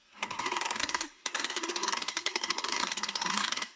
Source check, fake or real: fake